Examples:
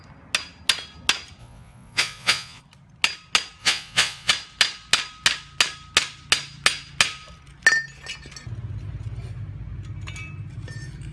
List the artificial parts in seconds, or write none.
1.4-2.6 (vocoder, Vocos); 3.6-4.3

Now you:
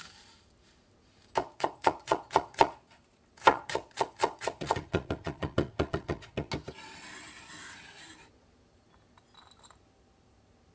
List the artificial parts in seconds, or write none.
1.4-2.9 (vocoder, Vocos); 3.5-6.5

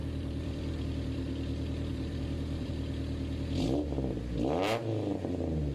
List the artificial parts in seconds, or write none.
0.0-2.7 (vocoder, BigVGAN v2)

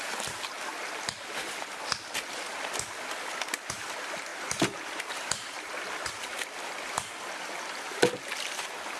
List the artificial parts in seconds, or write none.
4.3-5.8 (vocoder, BigVGAN v2)

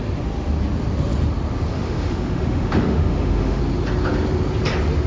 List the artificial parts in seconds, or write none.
1.7-3.6 (autoencoder, DAC-VAE)

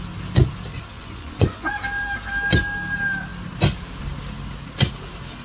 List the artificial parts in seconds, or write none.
0.7-1.7 (vocoder, Vocos)

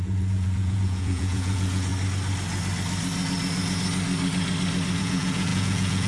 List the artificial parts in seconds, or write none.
0.0-1.9 (vocoder, Vocos); 5.0-6.1

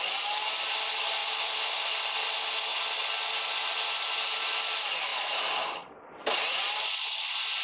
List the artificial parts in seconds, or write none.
1.2-2.3 (vocoder, BigVGAN v2); 5.1-6.6